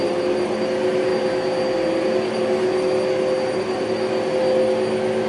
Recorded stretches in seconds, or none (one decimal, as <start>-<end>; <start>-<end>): 0.0-5.3